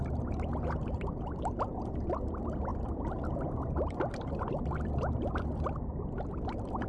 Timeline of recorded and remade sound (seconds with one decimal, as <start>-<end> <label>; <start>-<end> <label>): 0.0-0.5 recorded; 0.5-1.1 remade; 1.1-2.7 recorded; 2.7-6.9 remade